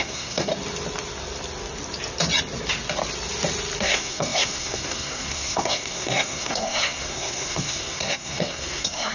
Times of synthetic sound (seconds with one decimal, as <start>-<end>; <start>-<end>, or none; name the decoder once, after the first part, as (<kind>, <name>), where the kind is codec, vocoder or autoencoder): 0.0-0.5 (codec, SNAC); 3.8-9.1